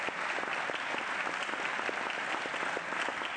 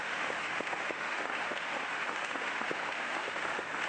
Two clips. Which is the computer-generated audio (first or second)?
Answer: second